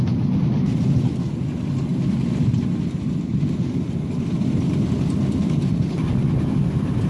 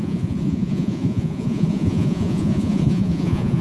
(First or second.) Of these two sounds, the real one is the first